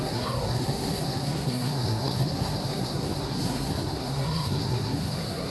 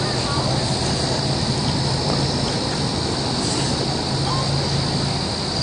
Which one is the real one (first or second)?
second